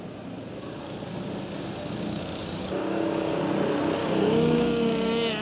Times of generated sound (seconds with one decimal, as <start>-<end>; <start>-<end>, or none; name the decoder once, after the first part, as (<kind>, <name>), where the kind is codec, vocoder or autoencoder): 2.4-3.4 (codec, DAC); 4.0-5.4